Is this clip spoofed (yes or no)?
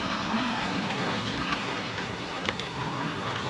yes